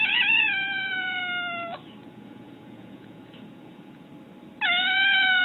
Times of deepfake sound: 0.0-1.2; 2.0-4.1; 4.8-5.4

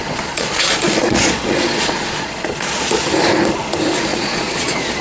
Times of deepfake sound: 0.0-3.0; 4.1-5.0